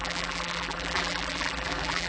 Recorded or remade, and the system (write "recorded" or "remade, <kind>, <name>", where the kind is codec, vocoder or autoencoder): remade, vocoder, BigVGAN v2